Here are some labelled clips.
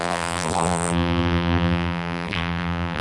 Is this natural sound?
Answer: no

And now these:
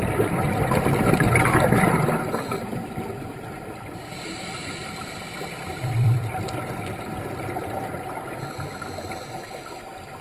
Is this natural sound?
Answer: no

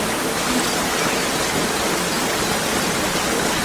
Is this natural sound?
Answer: yes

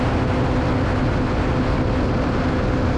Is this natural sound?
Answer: yes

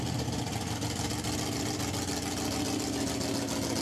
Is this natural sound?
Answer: yes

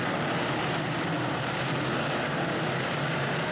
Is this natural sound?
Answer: no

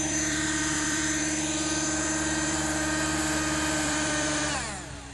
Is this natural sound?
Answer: no